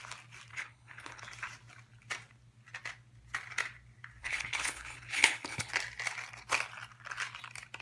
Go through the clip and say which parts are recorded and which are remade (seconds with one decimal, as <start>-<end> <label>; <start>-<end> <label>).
0.0-0.5 recorded; 0.5-1.2 remade; 1.2-4.2 recorded; 4.2-5.7 remade; 5.7-7.8 recorded